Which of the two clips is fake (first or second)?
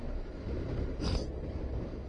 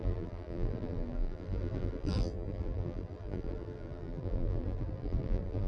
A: second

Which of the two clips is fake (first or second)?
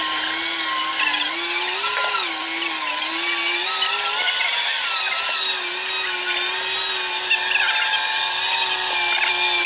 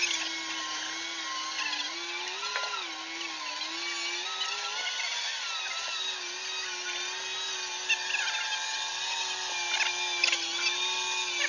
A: first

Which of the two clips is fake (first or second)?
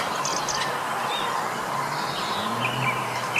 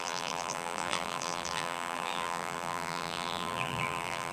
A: second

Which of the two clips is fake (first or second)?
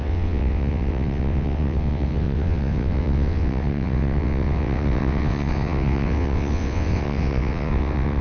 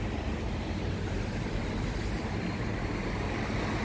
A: first